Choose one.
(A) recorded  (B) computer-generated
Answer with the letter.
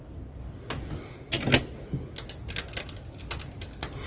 A